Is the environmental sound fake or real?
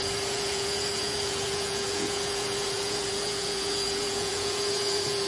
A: fake